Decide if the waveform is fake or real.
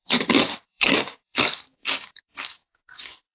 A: fake